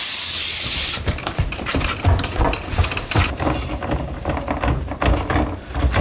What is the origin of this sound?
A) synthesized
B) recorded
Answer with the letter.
B